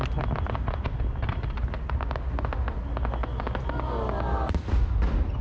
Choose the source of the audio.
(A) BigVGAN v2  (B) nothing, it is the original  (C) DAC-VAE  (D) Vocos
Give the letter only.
B